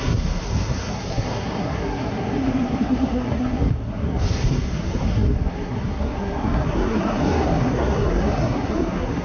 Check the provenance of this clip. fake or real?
fake